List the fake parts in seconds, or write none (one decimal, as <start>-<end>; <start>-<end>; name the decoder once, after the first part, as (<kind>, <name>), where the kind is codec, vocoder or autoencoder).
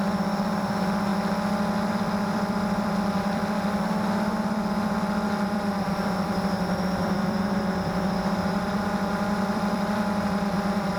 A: 0.0-1.1 (vocoder, BigVGAN v2); 1.9-11.0